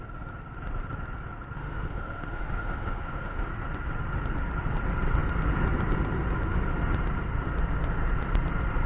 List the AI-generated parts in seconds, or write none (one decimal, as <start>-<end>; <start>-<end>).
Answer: 1.6-3.5